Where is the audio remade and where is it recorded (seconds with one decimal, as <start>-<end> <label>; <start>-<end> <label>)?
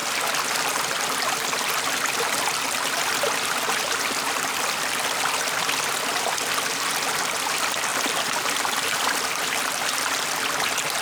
0.0-7.9 recorded; 7.9-9.1 remade; 9.1-11.0 recorded